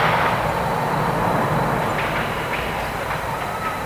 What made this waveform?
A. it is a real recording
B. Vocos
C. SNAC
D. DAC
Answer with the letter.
A